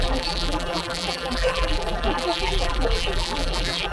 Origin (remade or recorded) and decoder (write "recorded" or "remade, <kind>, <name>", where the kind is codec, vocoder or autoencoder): remade, vocoder, BigVGAN v2